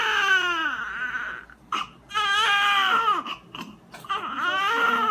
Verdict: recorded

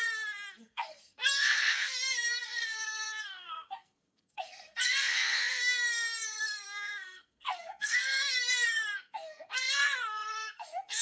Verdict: remade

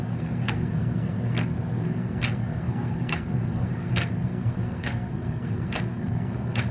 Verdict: remade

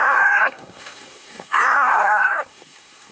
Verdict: remade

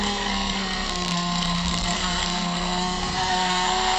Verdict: remade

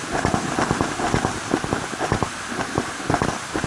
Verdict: recorded